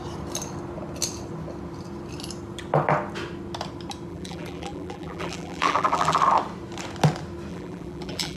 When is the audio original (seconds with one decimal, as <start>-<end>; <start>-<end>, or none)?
0.0-4.1; 6.2-7.5